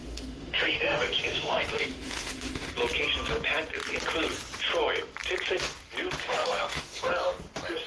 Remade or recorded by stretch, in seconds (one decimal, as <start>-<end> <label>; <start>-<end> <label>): 0.0-2.7 remade; 2.7-6.2 recorded; 6.2-7.1 remade; 7.1-7.9 recorded